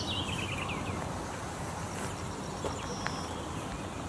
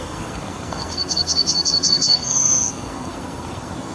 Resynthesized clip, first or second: second